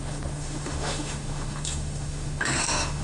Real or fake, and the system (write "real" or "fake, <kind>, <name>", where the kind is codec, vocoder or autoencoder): fake, autoencoder, DAC-VAE